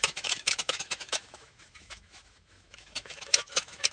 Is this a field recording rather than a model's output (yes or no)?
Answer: no